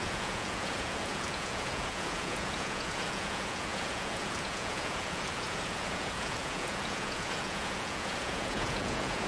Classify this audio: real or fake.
fake